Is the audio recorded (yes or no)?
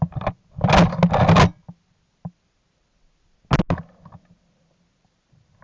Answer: yes